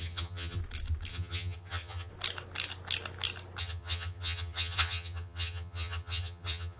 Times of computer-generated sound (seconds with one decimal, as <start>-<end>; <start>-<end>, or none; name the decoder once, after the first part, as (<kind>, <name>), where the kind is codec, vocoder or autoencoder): 0.0-0.6 (vocoder, HiFi-GAN); 1.1-2.1; 3.6-6.8